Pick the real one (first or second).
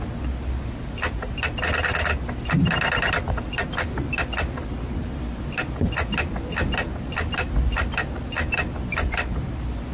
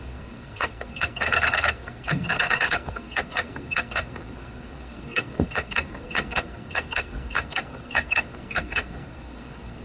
first